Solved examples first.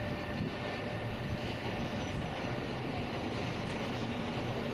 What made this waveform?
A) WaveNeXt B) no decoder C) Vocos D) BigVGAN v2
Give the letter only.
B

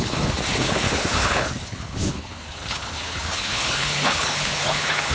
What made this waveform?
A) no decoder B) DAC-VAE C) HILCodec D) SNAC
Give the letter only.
C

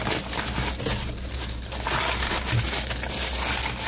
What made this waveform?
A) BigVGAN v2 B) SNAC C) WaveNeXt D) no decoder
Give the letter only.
D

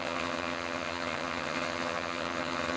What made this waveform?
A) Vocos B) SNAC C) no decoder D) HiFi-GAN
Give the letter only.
D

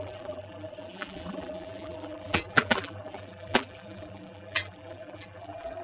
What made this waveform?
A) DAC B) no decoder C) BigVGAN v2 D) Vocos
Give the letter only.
C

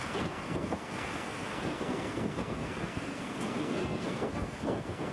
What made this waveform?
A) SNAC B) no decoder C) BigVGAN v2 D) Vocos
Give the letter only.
A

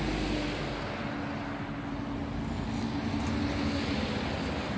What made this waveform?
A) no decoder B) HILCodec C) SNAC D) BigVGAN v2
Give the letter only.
A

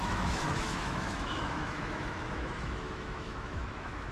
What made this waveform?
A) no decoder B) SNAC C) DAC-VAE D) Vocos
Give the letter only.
C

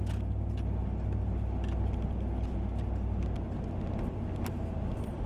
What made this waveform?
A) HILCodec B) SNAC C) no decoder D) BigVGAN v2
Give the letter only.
C